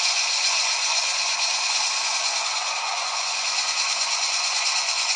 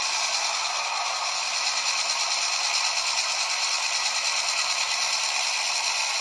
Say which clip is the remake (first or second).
first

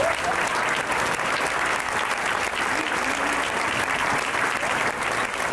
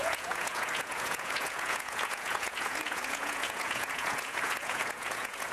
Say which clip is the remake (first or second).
second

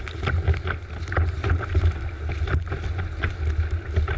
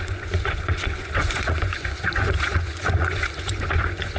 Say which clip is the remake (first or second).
second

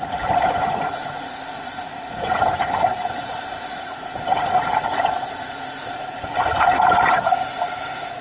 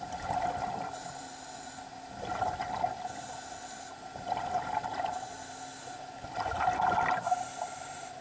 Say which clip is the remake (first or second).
first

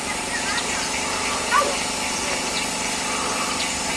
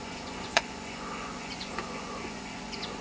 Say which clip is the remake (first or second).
second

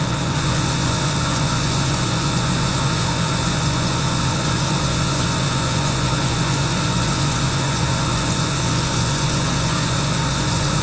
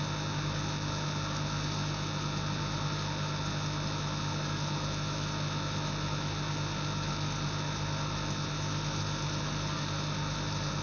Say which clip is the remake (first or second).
first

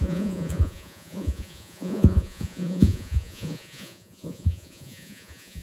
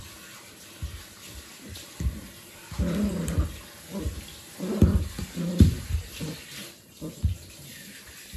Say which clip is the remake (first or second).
first